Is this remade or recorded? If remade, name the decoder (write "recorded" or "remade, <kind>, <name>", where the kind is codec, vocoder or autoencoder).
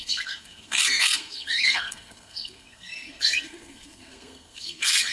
remade, codec, SNAC